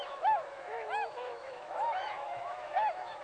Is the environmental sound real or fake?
fake